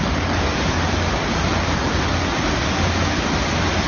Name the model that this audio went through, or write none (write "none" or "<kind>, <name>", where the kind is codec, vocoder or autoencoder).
none